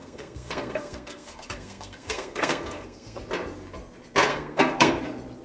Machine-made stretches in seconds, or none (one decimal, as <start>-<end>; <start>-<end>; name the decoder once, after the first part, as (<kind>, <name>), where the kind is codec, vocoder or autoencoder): 0.0-3.2 (codec, SNAC); 4.3-5.0